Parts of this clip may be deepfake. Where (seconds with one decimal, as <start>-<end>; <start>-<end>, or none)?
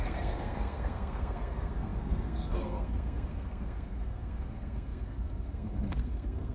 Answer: 0.0-6.5